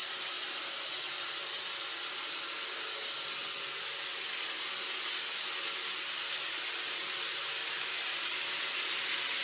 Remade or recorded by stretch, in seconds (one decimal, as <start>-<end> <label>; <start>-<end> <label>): 0.0-2.4 remade; 2.4-9.4 recorded